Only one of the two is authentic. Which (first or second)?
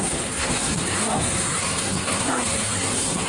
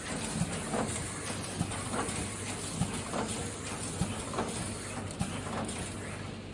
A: second